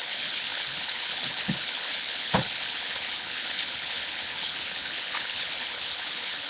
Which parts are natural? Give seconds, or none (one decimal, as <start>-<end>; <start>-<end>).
none